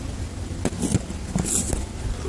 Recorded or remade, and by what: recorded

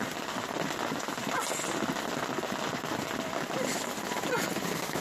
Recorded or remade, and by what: recorded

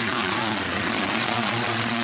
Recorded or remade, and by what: remade, vocoder, Vocos